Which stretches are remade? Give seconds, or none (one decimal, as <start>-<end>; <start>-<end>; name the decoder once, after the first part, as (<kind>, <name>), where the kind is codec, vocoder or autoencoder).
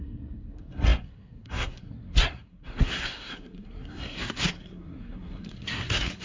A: 0.0-6.2 (codec, SNAC)